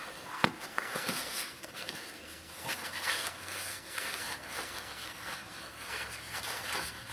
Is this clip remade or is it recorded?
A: remade